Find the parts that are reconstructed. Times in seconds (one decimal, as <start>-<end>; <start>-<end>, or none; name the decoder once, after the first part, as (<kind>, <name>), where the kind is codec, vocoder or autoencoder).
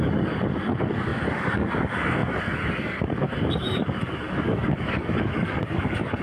0.0-6.2 (codec, DAC)